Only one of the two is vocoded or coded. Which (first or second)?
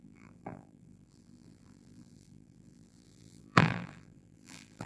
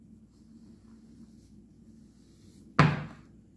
first